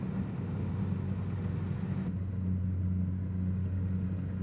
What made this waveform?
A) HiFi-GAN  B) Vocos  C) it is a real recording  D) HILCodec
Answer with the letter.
C